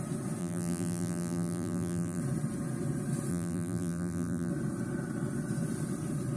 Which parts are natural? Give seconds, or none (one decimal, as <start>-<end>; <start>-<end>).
0.0-0.4; 2.2-3.3; 4.5-6.4